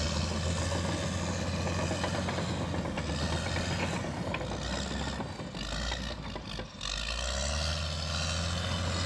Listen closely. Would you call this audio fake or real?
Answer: real